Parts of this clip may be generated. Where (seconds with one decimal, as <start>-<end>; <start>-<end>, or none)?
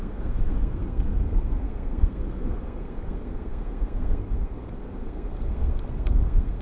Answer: 0.0-6.6